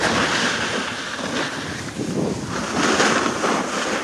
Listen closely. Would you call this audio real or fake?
real